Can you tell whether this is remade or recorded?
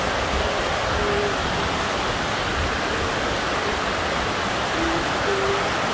recorded